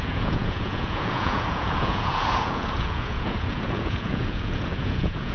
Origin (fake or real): fake